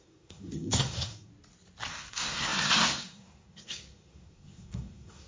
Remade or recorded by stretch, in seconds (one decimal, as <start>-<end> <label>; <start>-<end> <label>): 0.0-1.3 remade; 1.3-1.9 recorded; 1.9-5.3 remade